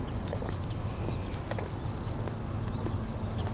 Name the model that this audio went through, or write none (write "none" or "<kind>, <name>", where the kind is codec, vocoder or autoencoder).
none